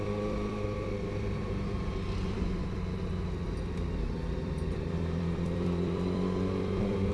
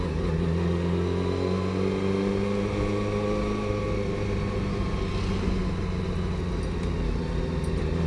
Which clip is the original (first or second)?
second